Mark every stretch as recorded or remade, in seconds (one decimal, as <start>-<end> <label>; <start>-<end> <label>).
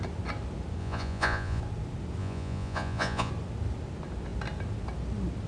0.0-0.8 recorded; 0.8-1.6 remade; 1.6-2.2 recorded; 2.2-3.3 remade; 3.3-5.5 recorded